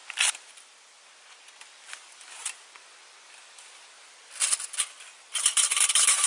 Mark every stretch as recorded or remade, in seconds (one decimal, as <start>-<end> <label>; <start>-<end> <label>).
0.0-1.0 remade; 1.0-2.4 recorded; 2.4-6.3 remade